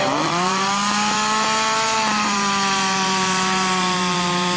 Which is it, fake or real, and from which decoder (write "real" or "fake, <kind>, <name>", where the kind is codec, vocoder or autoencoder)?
fake, vocoder, BigVGAN v2